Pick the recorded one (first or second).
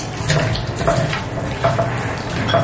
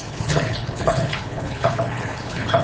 first